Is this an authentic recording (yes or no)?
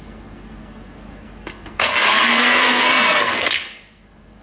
no